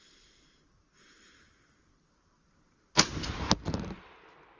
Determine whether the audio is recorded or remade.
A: recorded